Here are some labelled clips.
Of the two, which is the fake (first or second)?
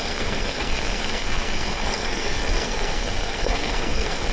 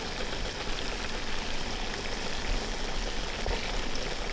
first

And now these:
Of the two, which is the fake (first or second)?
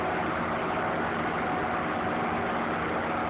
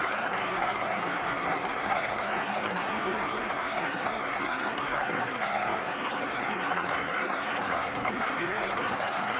second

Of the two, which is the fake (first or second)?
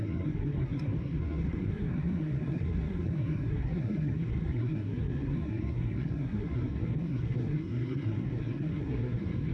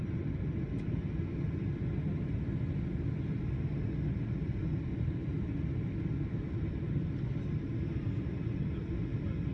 first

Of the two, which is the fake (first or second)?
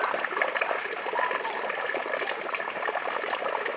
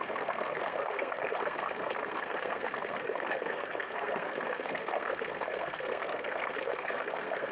second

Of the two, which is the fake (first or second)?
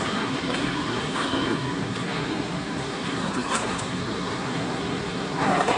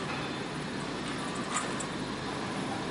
first